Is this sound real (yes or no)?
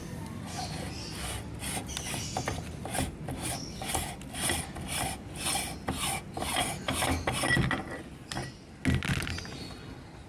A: yes